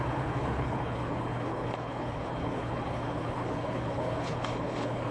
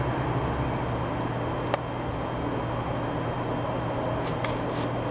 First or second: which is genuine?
second